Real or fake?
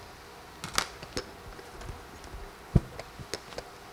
real